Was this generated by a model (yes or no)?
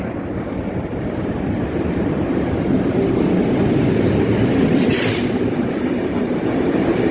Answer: yes